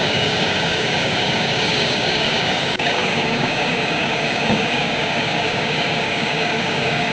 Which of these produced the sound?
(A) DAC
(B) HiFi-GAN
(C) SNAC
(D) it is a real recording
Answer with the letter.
A